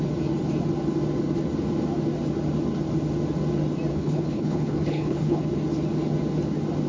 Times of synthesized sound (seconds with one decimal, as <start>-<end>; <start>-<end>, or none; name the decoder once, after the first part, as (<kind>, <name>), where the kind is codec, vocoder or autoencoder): 3.9-5.4 (codec, HILCodec)